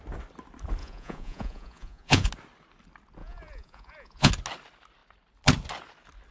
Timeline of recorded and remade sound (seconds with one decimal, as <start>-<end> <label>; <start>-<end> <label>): 0.0-0.8 recorded; 0.8-2.3 remade; 2.3-3.2 recorded; 3.2-4.3 remade; 4.3-6.3 recorded